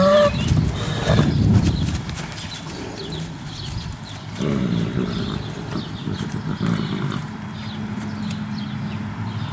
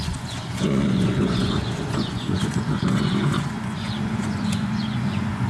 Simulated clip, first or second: second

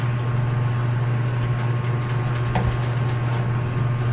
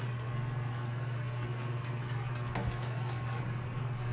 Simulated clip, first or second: second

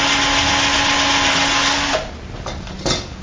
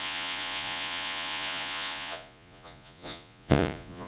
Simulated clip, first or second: second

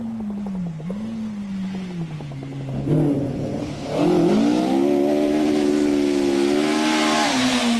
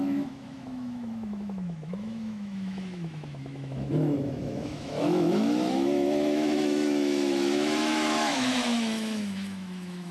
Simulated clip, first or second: second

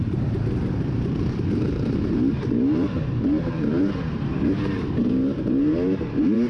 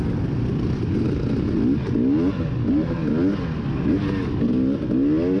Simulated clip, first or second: first